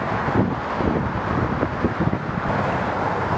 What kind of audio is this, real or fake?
fake